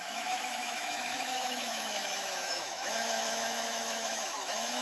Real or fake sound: fake